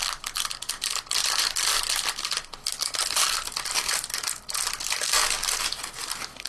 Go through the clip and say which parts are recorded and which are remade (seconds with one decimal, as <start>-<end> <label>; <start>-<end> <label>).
0.0-6.5 recorded